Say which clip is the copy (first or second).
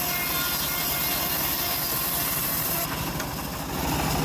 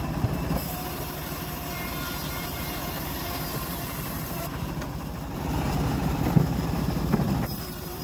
second